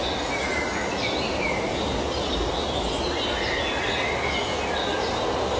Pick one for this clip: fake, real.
real